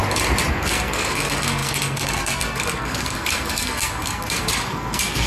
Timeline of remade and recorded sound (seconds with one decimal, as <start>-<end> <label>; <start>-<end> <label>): 0.0-0.5 recorded; 0.5-5.3 remade